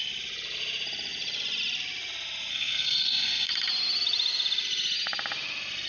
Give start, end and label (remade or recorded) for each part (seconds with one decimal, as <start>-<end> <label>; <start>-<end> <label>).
0.0-2.5 recorded; 2.5-3.5 remade; 3.5-5.9 recorded